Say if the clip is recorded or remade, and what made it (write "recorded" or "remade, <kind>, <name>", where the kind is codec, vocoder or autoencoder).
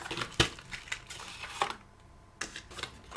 recorded